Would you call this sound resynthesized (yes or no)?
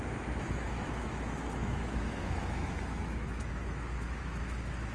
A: yes